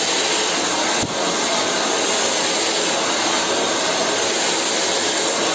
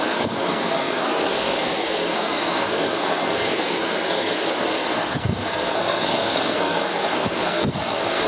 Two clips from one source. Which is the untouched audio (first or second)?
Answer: first